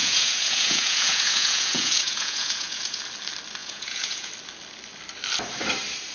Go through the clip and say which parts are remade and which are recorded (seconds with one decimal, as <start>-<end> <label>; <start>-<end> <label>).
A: 0.0-3.0 remade; 3.0-3.6 recorded; 3.6-4.3 remade; 4.3-6.1 recorded